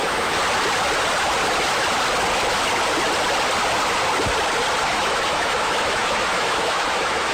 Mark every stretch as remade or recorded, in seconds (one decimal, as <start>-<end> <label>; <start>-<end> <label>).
0.0-0.4 remade; 0.4-4.8 recorded; 4.8-7.3 remade